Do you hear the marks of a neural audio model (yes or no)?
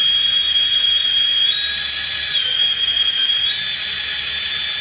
no